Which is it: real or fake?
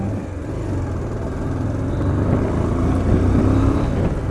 real